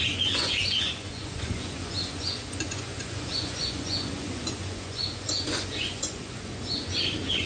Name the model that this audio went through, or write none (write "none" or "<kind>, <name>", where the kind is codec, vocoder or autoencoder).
vocoder, Vocos